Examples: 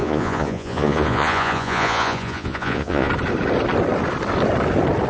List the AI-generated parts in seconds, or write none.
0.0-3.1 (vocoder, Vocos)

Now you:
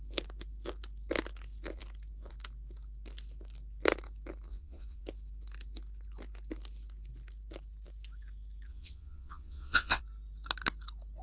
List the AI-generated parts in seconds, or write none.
4.5-5.0 (vocoder, Vocos); 8.7-10.0

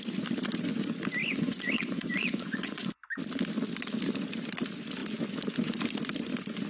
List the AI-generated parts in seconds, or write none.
1.2-2.9 (vocoder, Vocos)

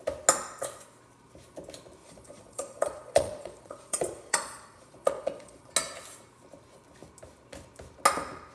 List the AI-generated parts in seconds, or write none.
2.0-5.7 (vocoder, Vocos)

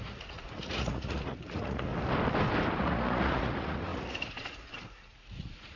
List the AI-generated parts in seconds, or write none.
0.0-1.9 (vocoder, Vocos); 2.8-5.8